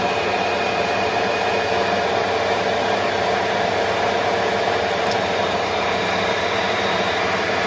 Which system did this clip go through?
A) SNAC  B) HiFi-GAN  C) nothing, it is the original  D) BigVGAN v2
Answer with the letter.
D